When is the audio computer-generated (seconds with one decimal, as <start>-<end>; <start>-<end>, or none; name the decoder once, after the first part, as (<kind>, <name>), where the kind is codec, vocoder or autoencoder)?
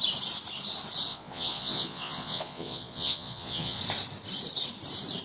1.1-3.8 (vocoder, Vocos)